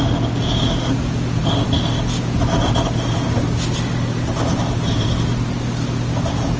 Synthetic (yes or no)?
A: no